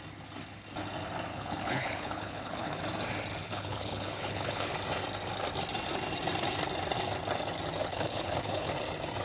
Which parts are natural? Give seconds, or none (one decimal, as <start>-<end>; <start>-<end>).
0.0-1.3; 2.8-3.4; 4.7-7.8; 8.7-9.2